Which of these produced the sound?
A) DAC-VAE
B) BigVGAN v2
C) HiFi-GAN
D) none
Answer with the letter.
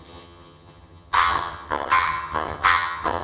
C